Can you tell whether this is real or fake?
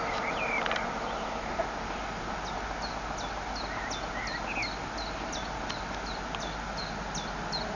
real